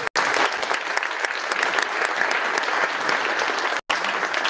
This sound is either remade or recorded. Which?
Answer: recorded